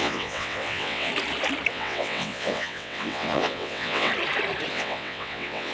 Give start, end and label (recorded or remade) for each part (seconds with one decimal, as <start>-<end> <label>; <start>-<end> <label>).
0.0-1.1 remade; 1.1-1.7 recorded; 1.7-4.1 remade; 4.1-4.7 recorded; 4.7-5.7 remade